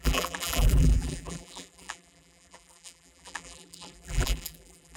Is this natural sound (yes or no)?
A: no